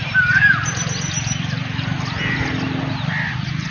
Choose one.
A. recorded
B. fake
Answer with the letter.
A